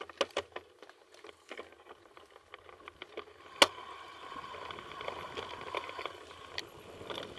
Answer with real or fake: real